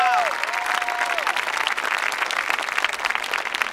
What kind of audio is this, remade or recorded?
recorded